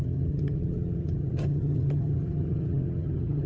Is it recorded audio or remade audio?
remade